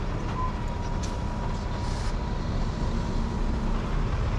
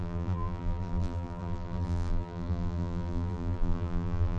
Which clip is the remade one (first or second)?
second